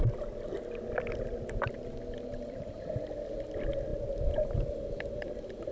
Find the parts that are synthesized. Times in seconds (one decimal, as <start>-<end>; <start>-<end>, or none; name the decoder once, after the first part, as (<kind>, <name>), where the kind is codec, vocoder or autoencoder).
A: 2.3-3.1 (vocoder, BigVGAN v2)